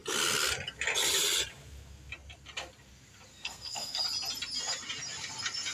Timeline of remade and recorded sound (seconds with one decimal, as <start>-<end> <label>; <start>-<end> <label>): 0.0-3.3 recorded; 3.3-4.0 remade; 4.0-5.7 recorded